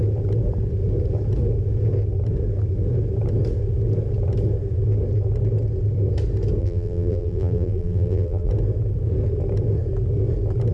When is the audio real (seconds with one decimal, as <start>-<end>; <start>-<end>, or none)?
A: 0.0-6.6; 8.5-10.7